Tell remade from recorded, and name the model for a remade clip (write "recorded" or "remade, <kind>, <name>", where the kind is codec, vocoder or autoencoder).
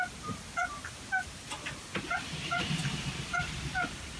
recorded